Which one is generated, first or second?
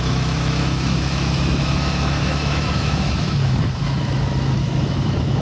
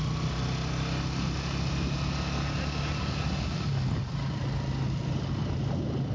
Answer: first